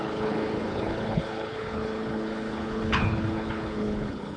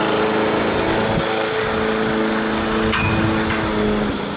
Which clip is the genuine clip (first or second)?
second